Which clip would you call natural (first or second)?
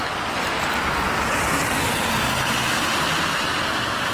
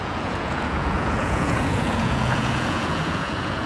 first